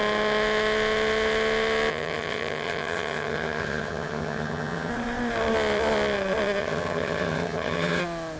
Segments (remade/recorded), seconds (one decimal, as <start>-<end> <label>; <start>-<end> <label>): 0.0-1.9 recorded; 1.9-4.9 remade; 4.9-6.6 recorded; 6.6-8.0 remade; 8.0-8.4 recorded